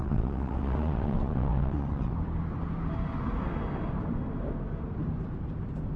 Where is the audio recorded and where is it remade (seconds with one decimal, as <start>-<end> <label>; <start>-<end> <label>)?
0.0-2.1 remade; 2.1-6.0 recorded